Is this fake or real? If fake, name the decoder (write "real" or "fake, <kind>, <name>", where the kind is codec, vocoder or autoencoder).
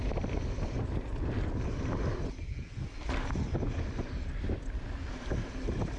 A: real